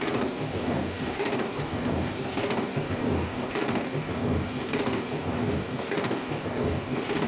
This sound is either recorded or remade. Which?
remade